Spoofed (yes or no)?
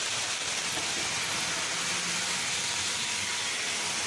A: no